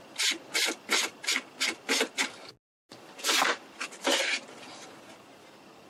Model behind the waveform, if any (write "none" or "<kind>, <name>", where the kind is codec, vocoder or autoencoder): none